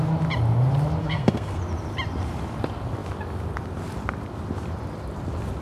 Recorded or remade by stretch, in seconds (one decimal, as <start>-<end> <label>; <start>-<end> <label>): 0.0-1.0 recorded; 1.0-1.6 remade; 1.6-5.6 recorded

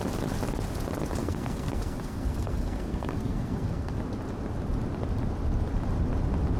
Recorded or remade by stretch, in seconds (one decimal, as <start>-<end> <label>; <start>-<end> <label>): 0.0-1.2 recorded; 1.2-4.0 remade; 4.0-6.6 recorded

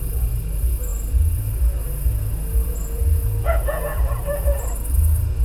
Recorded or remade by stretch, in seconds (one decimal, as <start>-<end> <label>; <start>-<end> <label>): 0.0-3.9 recorded; 3.9-4.7 remade; 4.7-5.4 recorded

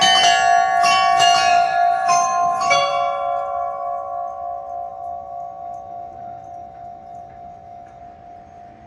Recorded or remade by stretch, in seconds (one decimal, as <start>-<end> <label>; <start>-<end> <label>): 0.0-1.5 recorded; 1.5-2.9 remade; 2.9-4.9 recorded; 4.9-8.0 remade; 8.0-8.9 recorded

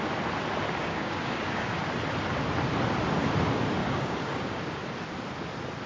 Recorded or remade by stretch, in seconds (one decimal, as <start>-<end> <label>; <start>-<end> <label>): 0.0-0.8 recorded; 0.8-1.8 remade; 1.8-3.8 recorded; 3.8-4.8 remade; 4.8-5.9 recorded

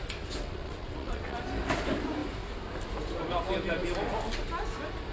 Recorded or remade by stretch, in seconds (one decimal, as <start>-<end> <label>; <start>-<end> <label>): 0.0-0.4 recorded; 0.4-1.4 remade; 1.4-5.1 recorded

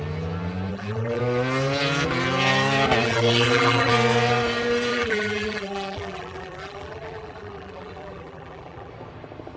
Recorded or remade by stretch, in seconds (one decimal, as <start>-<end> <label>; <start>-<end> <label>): 0.0-0.7 recorded; 0.7-1.2 remade; 1.2-3.0 recorded; 3.0-3.9 remade; 3.9-4.9 recorded; 4.9-8.9 remade; 8.9-9.6 recorded